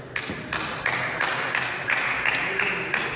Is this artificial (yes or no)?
no